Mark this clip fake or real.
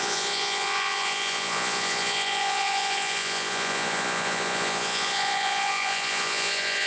fake